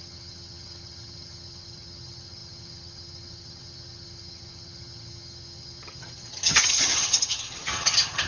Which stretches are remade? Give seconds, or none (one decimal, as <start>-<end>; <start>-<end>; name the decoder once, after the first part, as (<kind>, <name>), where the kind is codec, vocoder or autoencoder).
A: 0.0-8.3 (vocoder, HiFi-GAN)